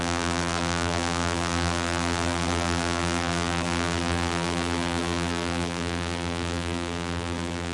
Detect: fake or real fake